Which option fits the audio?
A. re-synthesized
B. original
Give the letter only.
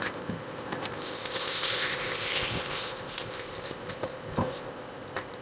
A